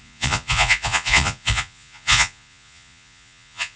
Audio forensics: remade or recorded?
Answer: remade